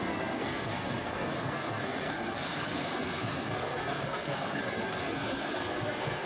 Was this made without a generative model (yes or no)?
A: no